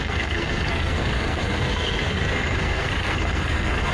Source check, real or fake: fake